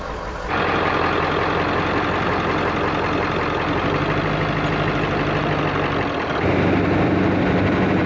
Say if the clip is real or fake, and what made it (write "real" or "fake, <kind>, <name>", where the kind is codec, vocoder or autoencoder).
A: real